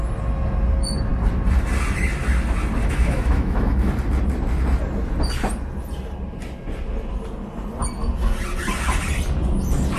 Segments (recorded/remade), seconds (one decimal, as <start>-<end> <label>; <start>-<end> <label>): 0.0-2.8 recorded; 2.8-3.9 remade; 3.9-10.0 recorded